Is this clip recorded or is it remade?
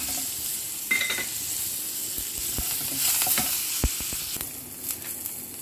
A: recorded